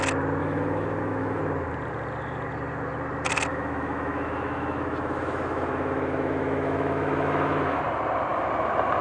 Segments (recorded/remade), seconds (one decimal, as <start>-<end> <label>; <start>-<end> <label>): 0.0-0.4 recorded; 0.4-1.4 remade; 1.4-3.5 recorded; 3.5-7.8 remade; 7.8-9.0 recorded